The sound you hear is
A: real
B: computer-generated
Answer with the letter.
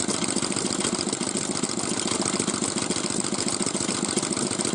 A